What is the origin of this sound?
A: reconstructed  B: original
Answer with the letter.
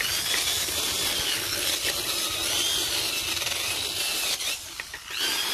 B